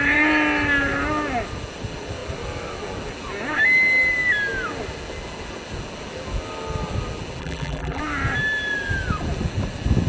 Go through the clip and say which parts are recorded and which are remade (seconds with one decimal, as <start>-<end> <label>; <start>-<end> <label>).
0.0-7.4 recorded; 7.4-8.0 remade; 8.0-10.1 recorded